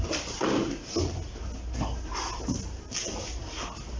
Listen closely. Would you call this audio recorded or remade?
recorded